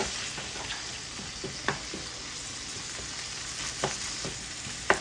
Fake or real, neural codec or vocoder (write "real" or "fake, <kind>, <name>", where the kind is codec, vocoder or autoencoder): real